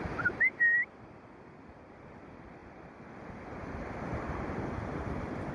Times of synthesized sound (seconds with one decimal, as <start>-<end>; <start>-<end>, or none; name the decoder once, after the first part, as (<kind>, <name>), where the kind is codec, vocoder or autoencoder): none